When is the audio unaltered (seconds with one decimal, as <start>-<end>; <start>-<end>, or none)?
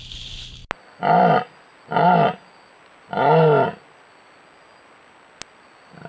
0.0-6.1